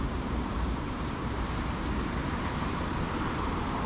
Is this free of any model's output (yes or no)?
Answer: no